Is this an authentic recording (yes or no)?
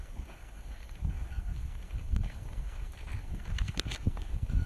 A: no